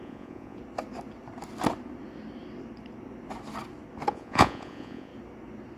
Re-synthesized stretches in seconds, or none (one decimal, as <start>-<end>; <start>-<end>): 0.0-0.6; 4.1-5.1